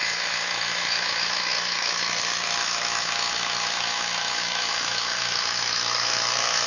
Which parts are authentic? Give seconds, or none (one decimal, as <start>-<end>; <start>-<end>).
none

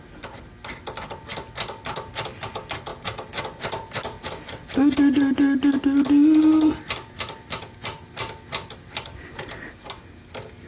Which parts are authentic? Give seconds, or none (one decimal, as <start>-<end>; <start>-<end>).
0.0-10.7

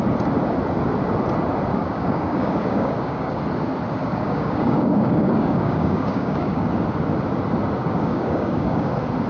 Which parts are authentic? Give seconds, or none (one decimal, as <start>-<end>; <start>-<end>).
0.0-1.8; 3.4-4.0; 6.7-7.8; 8.9-9.3

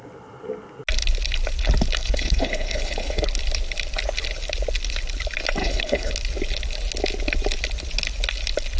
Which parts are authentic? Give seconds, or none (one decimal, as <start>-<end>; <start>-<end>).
0.0-2.0; 3.2-5.6; 6.1-8.8

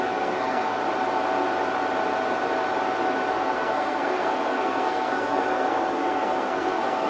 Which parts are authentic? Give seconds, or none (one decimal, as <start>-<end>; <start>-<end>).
0.8-3.3